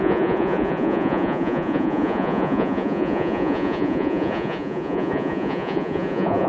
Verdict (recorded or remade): remade